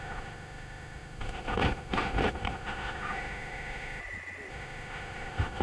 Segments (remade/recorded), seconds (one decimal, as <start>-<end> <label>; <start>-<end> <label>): 0.0-4.0 remade; 4.0-4.5 recorded; 4.5-5.6 remade